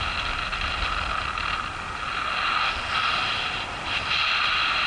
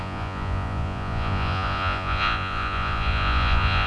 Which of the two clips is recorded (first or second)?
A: first